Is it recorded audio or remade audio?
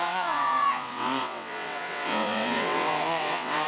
remade